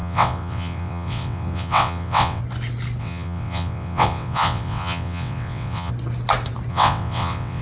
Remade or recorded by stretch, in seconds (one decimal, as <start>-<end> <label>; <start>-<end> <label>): 0.0-2.4 remade; 2.4-3.0 recorded; 3.0-5.9 remade; 5.9-6.7 recorded; 6.7-7.6 remade

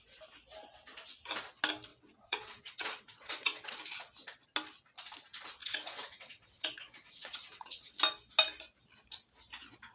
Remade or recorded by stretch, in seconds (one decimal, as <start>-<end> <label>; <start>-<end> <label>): 0.0-1.9 recorded; 1.9-3.8 remade; 3.8-5.6 recorded; 5.6-8.0 remade; 8.0-9.9 recorded

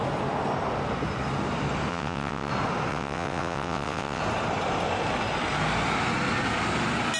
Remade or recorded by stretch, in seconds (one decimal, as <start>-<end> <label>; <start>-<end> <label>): 0.0-1.9 recorded; 1.9-2.5 remade; 2.5-2.9 recorded; 2.9-4.2 remade; 4.2-7.2 recorded

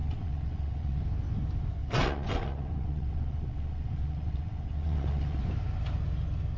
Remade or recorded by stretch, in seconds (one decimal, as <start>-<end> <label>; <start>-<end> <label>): 0.0-1.0 remade; 1.0-1.8 recorded; 1.8-5.4 remade; 5.4-6.6 recorded

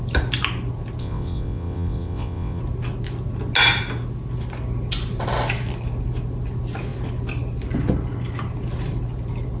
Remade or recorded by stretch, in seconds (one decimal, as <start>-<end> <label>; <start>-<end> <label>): 0.0-1.0 recorded; 1.0-2.6 remade; 2.6-9.6 recorded